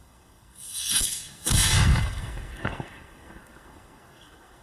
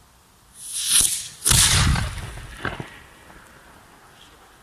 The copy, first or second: first